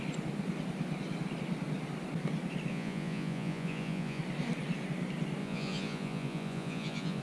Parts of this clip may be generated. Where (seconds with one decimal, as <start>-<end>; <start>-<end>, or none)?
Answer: 2.7-4.2; 5.4-7.2